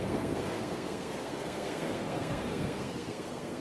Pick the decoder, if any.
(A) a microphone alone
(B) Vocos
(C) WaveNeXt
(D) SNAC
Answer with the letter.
D